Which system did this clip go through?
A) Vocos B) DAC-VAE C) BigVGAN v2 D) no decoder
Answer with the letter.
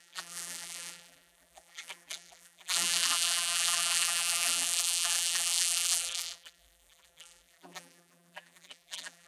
C